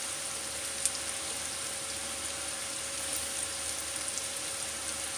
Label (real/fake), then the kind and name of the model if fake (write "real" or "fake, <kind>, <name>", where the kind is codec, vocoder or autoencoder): real